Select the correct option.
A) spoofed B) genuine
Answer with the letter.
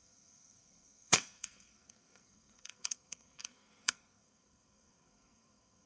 A